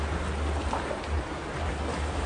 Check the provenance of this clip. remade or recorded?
recorded